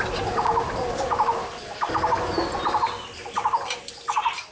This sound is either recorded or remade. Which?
recorded